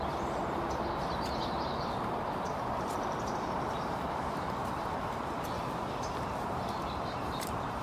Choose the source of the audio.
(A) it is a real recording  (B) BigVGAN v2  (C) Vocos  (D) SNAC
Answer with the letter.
B